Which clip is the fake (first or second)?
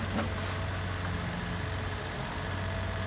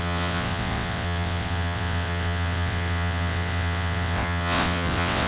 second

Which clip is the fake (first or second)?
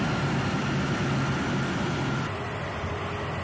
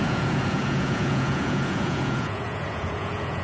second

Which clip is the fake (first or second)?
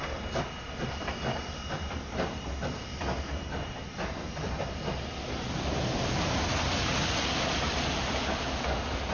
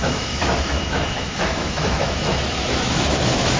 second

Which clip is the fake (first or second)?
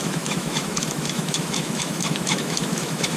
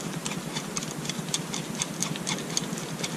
first